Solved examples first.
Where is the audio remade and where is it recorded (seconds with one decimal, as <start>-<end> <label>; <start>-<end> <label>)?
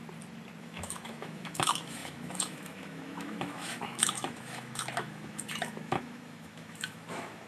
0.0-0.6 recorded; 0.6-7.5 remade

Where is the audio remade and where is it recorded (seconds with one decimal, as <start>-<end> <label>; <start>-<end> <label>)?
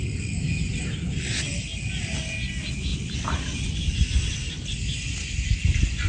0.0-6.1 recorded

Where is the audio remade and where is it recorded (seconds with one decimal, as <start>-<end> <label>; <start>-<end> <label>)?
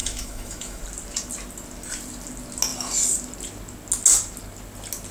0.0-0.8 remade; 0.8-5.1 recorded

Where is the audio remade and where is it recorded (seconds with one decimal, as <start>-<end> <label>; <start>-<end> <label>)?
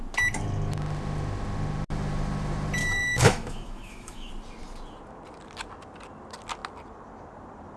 0.0-2.8 recorded; 2.8-4.3 remade; 4.3-7.8 recorded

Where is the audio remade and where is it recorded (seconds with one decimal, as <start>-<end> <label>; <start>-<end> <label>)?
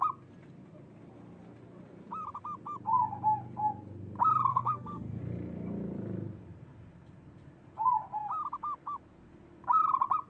0.0-4.5 recorded; 4.5-5.2 remade; 5.2-10.3 recorded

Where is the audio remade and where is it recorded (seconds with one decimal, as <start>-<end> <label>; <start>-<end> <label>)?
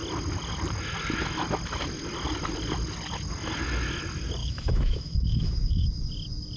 0.0-4.4 recorded; 4.4-6.1 remade; 6.1-6.6 recorded